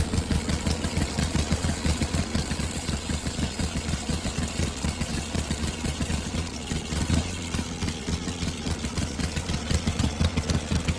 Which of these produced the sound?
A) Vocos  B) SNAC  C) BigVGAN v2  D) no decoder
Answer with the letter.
A